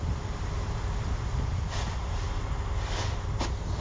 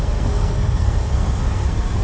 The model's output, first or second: second